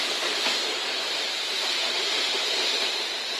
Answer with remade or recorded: remade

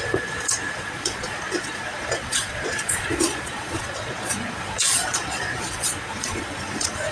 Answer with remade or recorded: remade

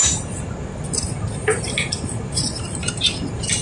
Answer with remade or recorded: recorded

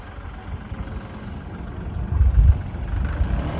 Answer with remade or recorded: recorded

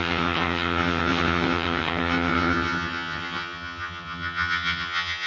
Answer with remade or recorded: remade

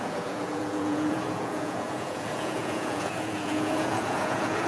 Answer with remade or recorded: remade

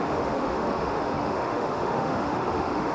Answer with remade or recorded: remade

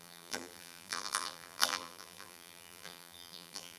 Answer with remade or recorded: remade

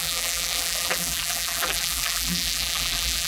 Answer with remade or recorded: remade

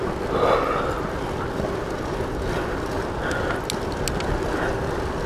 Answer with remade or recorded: recorded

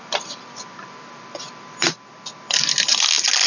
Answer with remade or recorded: recorded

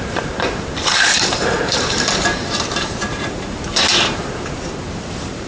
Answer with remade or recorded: remade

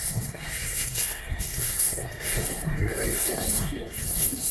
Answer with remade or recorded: remade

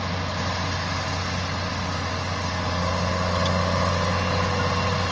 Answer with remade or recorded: recorded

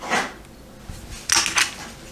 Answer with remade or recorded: recorded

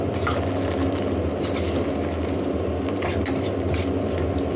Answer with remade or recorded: recorded